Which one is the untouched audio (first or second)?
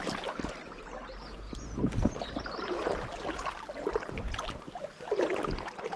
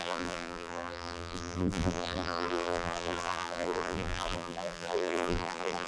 first